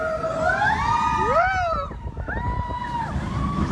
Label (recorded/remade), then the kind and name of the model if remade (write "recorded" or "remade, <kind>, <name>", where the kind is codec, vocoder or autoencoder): recorded